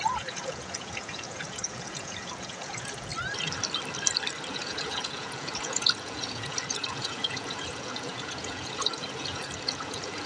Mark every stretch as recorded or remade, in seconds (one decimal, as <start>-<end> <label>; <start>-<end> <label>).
0.0-3.1 remade; 3.1-4.5 recorded; 4.5-10.3 remade